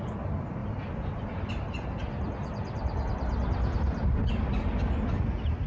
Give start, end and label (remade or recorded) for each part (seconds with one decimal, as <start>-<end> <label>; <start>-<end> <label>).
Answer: 0.0-0.6 recorded; 0.6-1.5 remade; 1.5-2.4 recorded; 2.4-4.2 remade; 4.2-5.7 recorded